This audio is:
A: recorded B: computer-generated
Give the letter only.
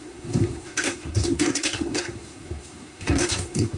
B